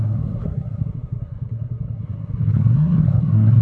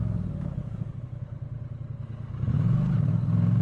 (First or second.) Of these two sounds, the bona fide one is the second